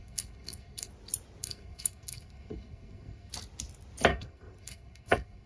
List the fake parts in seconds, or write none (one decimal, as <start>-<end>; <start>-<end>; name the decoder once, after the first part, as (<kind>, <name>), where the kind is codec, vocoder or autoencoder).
0.0-0.9 (codec, SNAC); 1.4-3.3; 4.1-5.5